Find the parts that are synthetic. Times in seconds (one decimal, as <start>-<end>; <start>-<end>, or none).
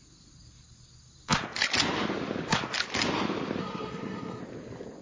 3.6-4.4